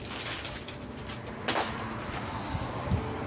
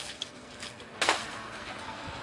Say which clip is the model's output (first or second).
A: second